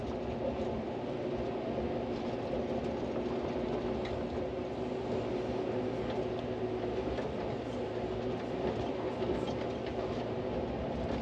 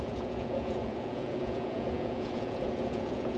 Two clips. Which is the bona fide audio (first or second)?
first